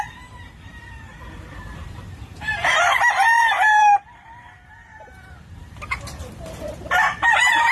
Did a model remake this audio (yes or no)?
yes